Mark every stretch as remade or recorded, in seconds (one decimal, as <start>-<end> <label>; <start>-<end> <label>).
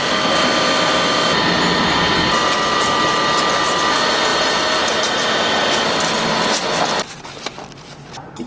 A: 0.0-8.5 recorded